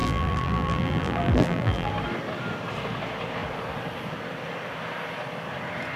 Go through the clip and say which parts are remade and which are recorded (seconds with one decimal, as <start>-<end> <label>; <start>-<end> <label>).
0.0-1.9 remade; 1.9-6.0 recorded